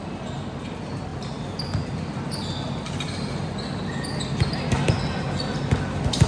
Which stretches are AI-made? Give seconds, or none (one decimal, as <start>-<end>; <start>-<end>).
none

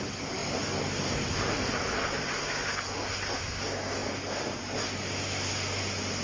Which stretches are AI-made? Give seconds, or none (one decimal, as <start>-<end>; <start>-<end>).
none

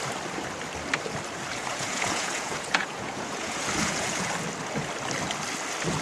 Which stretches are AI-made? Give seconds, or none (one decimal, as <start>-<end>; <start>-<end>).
1.5-4.3

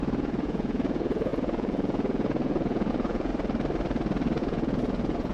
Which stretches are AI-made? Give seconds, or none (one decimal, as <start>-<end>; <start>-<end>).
0.0-3.3; 4.4-5.3

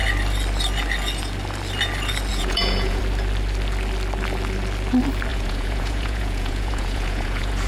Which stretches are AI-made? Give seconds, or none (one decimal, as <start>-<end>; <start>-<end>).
2.3-3.0; 5.3-7.7